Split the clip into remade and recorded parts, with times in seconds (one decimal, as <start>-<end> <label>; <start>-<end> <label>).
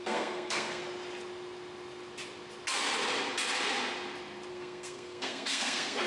0.0-0.8 remade; 0.8-4.5 recorded; 4.5-6.1 remade